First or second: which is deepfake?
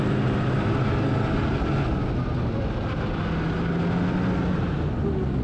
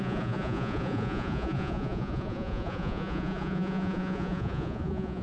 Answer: second